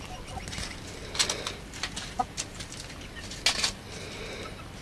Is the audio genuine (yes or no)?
yes